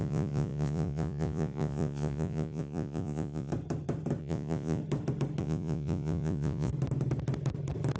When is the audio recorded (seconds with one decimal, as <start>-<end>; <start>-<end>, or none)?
3.5-4.2; 4.8-5.4; 6.7-8.0